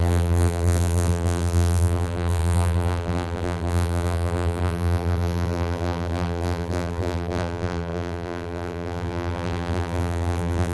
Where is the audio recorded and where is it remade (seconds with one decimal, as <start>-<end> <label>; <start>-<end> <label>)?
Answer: 0.0-10.7 remade